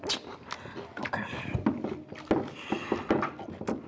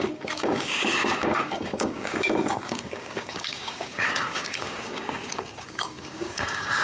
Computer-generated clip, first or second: second